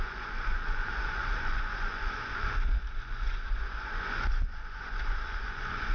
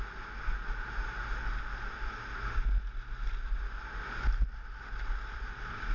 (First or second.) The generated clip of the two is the first